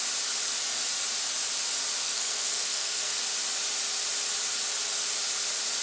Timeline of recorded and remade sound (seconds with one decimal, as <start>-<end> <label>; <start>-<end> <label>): 0.0-2.0 recorded; 2.0-3.2 remade; 3.2-5.8 recorded